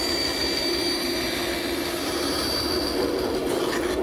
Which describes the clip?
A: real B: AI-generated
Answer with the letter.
A